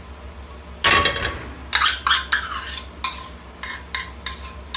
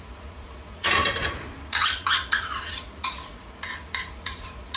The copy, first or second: second